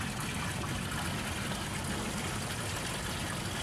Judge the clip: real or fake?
real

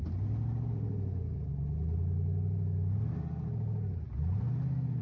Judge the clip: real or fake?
real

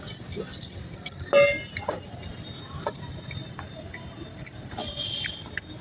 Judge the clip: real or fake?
real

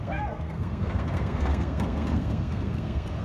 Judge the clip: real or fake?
fake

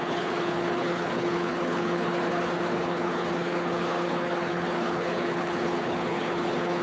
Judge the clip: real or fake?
fake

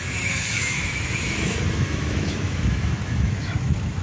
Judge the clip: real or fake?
fake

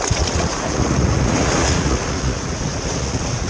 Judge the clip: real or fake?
fake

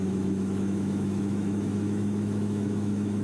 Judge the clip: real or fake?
fake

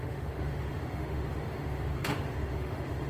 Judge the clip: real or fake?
fake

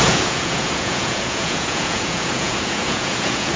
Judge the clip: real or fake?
fake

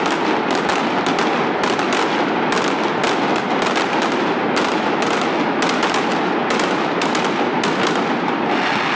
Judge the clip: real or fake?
real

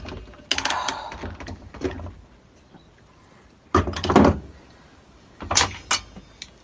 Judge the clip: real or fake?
real